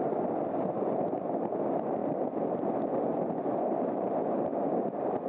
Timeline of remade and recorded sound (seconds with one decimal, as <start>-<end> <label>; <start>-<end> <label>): 0.0-5.3 recorded